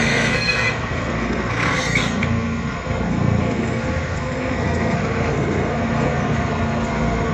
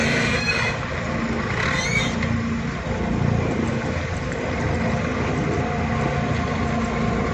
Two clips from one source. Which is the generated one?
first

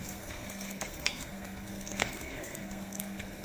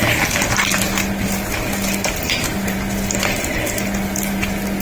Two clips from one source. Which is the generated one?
first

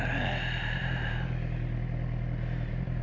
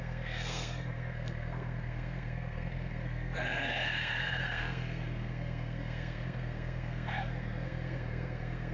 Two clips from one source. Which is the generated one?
second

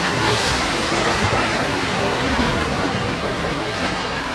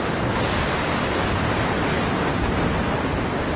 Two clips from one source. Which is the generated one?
first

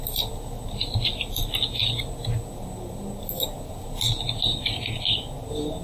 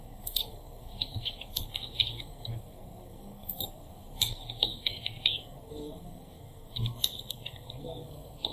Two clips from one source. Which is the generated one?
second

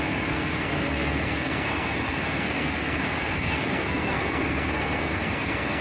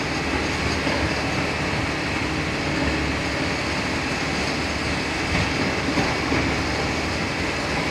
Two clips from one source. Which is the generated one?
first